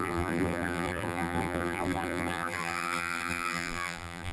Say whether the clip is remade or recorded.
remade